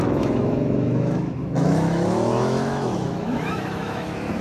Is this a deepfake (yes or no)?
yes